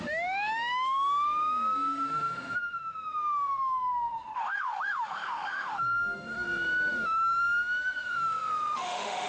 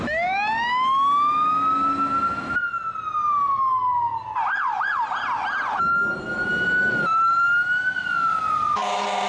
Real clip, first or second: second